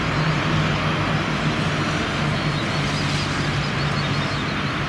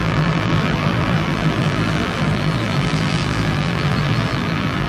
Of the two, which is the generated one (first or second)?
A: second